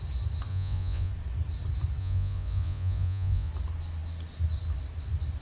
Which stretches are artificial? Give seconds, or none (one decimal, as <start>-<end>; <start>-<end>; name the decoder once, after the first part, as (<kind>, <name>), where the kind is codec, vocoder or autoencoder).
0.5-1.1 (vocoder, Vocos); 2.0-3.5